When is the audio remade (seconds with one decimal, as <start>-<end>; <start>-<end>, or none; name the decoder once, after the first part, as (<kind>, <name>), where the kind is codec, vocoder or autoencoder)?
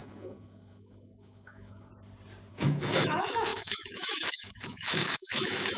0.0-1.9 (autoencoder, DAC-VAE); 2.5-5.8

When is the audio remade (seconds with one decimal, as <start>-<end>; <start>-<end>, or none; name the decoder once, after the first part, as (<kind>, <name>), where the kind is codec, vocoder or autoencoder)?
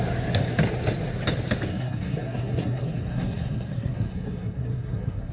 1.7-5.3 (codec, SNAC)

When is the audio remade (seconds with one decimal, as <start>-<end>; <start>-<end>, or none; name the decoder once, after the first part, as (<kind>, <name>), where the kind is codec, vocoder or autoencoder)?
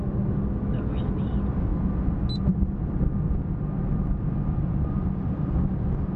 none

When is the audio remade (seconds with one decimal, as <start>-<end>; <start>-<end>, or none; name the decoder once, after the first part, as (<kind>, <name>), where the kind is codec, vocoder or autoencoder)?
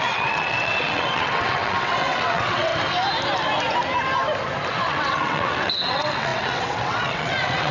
0.0-2.7 (vocoder, WaveNeXt); 4.7-7.7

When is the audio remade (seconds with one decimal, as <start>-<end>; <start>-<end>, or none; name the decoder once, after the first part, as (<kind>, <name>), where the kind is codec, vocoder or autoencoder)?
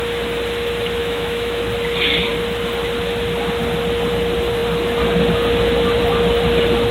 1.0-1.6 (autoencoder, DAC-VAE)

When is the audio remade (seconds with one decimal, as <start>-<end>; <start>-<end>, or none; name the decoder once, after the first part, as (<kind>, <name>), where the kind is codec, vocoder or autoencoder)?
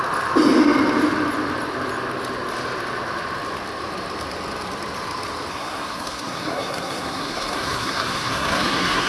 5.5-9.1 (codec, SNAC)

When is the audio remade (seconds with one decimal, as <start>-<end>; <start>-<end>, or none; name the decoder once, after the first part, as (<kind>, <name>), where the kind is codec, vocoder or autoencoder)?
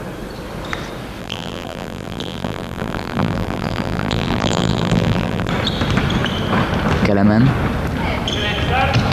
1.2-5.5 (vocoder, BigVGAN v2)